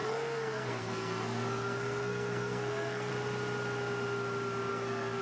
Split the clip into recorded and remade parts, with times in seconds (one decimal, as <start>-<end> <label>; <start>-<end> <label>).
0.0-3.1 remade; 3.1-4.7 recorded; 4.7-5.2 remade